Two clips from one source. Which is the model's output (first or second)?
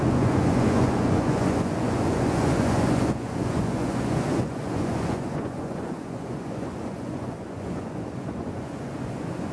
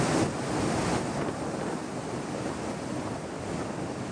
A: first